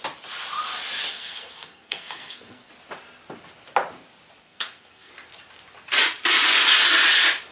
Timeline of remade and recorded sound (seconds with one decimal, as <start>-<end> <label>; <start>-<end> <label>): 0.0-1.1 recorded; 1.1-2.7 remade; 2.7-4.4 recorded; 4.4-5.1 remade; 5.1-7.5 recorded